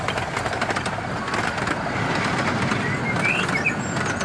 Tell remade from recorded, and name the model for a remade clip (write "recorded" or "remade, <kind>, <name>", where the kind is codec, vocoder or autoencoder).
recorded